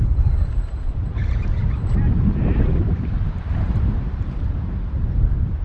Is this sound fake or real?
fake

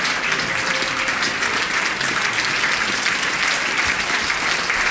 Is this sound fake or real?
real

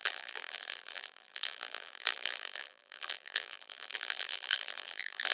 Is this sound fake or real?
fake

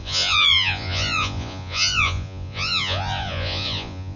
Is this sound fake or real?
fake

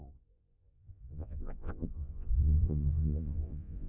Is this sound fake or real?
fake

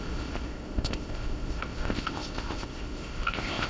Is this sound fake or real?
fake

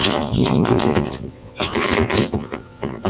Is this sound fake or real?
fake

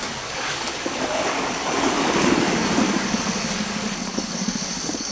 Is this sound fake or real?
fake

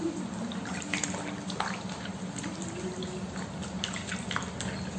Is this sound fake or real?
real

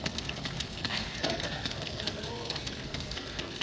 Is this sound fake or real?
fake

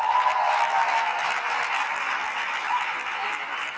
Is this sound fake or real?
real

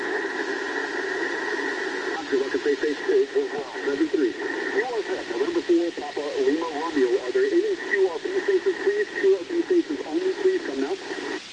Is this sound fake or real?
real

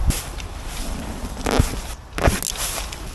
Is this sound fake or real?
real